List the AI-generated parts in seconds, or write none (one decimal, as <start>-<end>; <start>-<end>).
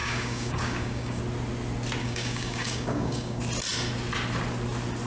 0.0-1.2; 2.0-3.4